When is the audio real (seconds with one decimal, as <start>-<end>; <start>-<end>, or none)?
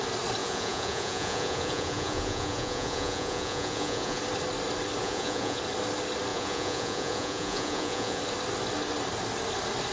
0.0-0.4; 4.2-5.0; 5.6-6.3; 8.2-9.9